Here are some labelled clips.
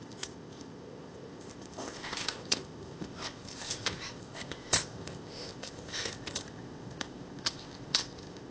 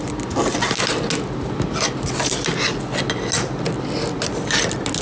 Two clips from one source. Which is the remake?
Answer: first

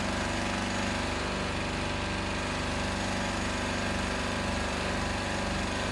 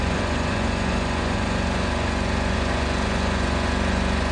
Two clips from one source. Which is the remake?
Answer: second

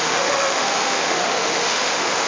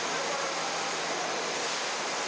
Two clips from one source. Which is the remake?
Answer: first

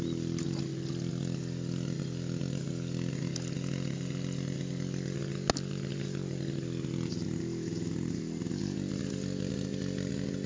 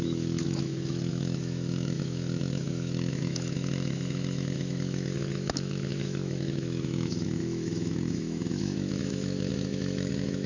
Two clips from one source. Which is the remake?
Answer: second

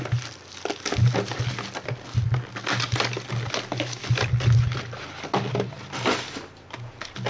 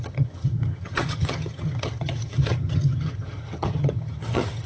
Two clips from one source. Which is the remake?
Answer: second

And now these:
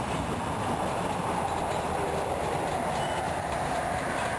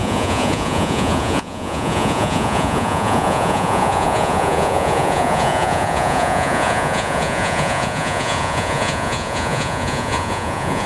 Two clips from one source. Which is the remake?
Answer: second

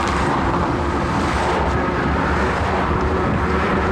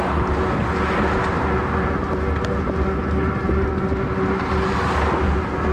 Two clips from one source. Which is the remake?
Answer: first